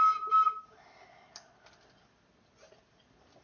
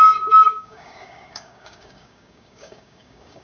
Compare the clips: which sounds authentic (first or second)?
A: first